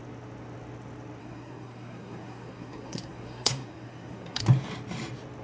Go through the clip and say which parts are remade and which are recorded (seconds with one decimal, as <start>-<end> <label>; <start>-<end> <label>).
0.0-1.2 recorded; 1.2-4.4 remade; 4.4-5.4 recorded